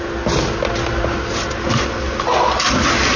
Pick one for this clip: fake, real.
real